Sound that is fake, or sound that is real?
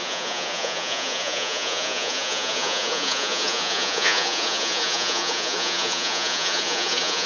fake